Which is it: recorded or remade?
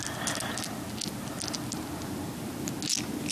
recorded